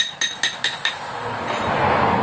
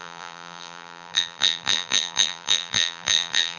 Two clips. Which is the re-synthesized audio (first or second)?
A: second